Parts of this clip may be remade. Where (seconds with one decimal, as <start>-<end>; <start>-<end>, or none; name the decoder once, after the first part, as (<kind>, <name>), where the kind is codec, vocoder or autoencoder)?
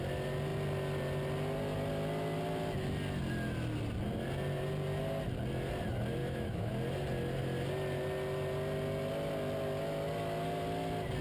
6.2-6.7 (autoencoder, DAC-VAE)